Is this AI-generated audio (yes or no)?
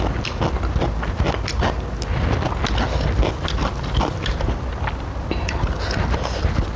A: no